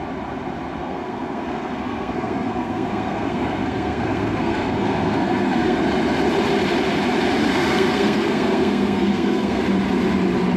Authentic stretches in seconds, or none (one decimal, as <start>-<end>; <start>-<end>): 0.0-0.8; 5.8-7.5; 9.6-10.6